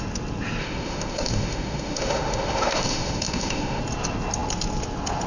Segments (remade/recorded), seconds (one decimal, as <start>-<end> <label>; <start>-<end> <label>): 0.0-0.6 recorded; 0.6-3.8 remade; 3.8-5.3 recorded